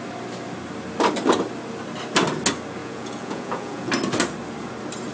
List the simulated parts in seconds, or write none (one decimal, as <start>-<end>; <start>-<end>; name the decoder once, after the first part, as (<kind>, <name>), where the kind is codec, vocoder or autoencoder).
2.8-3.9 (vocoder, Vocos)